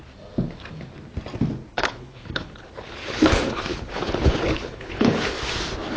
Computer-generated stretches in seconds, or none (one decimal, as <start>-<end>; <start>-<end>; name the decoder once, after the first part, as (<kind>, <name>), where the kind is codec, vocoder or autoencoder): 1.7-5.3 (codec, HILCodec)

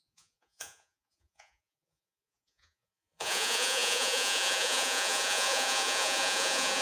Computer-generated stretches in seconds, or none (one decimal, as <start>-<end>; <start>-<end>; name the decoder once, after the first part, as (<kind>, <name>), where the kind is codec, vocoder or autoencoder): 0.0-6.8 (vocoder, Vocos)

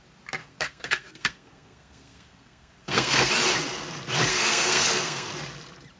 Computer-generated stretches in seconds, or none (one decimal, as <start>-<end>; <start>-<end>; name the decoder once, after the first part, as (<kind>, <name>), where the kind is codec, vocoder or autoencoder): 0.4-3.3 (codec, SNAC); 4.3-5.3

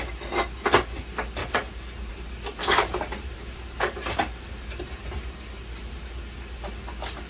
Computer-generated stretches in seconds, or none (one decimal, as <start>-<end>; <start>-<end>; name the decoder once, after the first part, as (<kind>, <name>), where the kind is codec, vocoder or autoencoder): 1.4-2.1 (vocoder, BigVGAN v2); 2.6-5.6

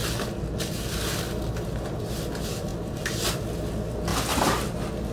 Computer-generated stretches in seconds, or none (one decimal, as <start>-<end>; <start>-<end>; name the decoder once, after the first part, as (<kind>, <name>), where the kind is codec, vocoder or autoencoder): none